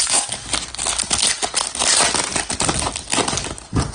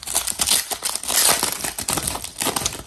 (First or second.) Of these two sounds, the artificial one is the second